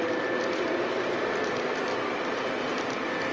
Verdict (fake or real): real